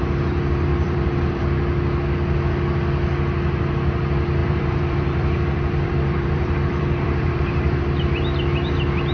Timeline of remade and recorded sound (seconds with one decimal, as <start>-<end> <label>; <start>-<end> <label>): 0.0-0.7 recorded; 0.7-1.4 remade; 1.4-4.4 recorded; 4.4-7.8 remade; 7.8-9.1 recorded